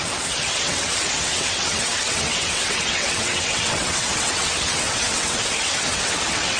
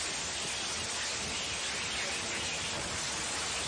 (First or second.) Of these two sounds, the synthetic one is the first